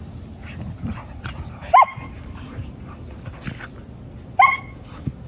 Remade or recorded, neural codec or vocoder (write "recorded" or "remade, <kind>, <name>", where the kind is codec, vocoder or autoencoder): recorded